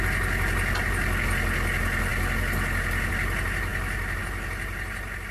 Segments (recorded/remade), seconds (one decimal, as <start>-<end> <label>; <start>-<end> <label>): 0.0-3.7 recorded; 3.7-4.2 remade; 4.2-5.3 recorded